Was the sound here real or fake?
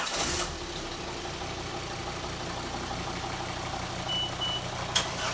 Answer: real